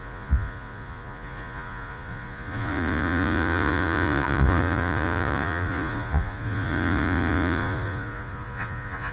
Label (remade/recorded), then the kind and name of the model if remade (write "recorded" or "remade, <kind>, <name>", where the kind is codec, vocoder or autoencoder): remade, vocoder, Vocos